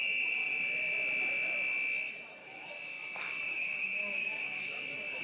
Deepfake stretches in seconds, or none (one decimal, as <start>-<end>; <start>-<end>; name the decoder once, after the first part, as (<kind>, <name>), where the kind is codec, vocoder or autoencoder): 2.4-5.2 (codec, DAC)